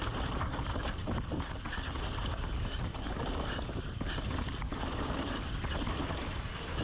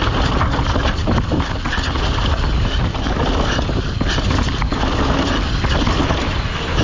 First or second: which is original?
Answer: second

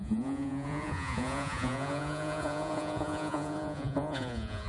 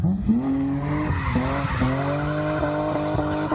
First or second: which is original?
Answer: second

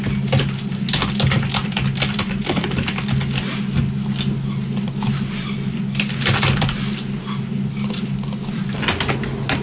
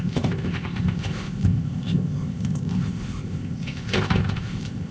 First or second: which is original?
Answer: first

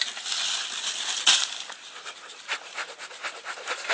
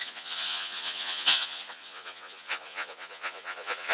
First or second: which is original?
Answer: first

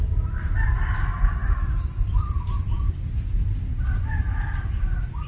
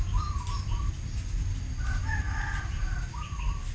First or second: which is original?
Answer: second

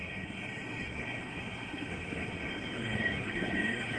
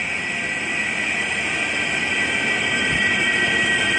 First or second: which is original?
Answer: second